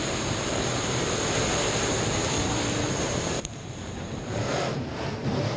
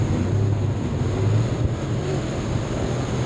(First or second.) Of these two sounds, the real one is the second